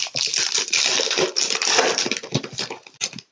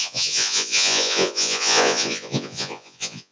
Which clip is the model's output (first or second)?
second